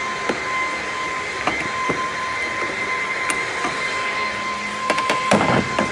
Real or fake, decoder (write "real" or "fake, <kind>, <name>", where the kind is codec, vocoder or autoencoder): fake, vocoder, BigVGAN v2